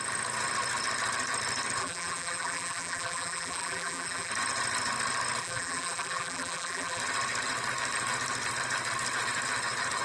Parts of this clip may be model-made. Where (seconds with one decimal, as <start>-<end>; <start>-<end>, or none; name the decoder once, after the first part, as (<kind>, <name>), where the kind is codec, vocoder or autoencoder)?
1.8-4.3 (vocoder, BigVGAN v2); 5.4-7.0